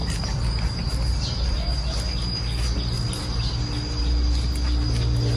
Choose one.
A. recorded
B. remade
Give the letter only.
A